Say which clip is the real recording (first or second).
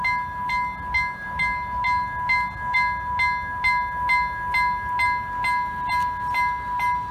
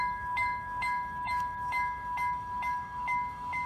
first